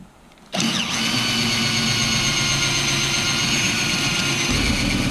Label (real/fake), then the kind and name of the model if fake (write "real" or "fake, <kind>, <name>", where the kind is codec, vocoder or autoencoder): real